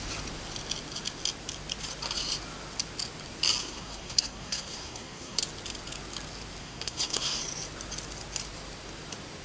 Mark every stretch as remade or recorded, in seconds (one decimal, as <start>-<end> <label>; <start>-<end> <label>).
0.0-3.6 recorded; 3.6-5.4 remade; 5.4-6.6 recorded; 6.6-7.4 remade; 7.4-9.4 recorded